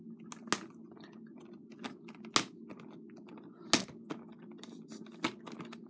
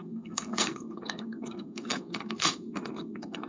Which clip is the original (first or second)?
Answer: first